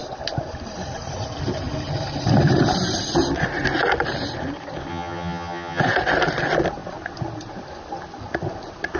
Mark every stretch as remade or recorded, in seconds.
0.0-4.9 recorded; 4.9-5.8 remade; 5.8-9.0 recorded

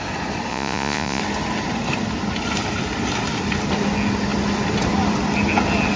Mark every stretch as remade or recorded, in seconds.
0.0-0.5 recorded; 0.5-1.2 remade; 1.2-6.0 recorded

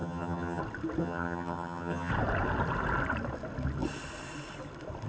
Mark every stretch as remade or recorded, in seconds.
0.0-0.6 remade; 0.6-1.0 recorded; 1.0-2.1 remade; 2.1-5.1 recorded